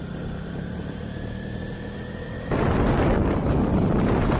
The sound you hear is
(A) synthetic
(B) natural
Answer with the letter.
A